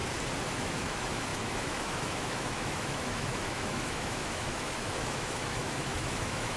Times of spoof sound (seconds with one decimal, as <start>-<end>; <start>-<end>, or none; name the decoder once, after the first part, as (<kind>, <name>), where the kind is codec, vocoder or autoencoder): 0.5-6.6 (autoencoder, DAC-VAE)